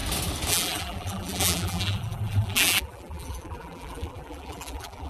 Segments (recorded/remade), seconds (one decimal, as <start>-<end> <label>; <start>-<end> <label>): 0.0-0.5 recorded; 0.5-5.1 remade